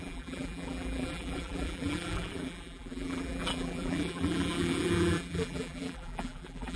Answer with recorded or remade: remade